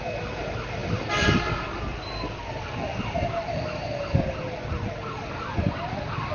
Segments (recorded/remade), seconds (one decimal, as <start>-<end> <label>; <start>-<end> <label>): 0.0-0.8 recorded; 0.8-1.3 remade; 1.3-1.9 recorded; 1.9-2.5 remade; 2.5-6.3 recorded